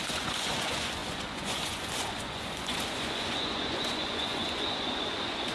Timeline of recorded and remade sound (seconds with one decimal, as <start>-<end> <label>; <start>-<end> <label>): 0.0-5.5 remade